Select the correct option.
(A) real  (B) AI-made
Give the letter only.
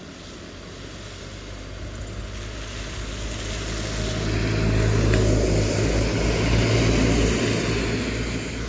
A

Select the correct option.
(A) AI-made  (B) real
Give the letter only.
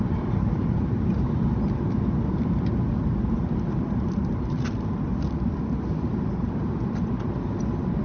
A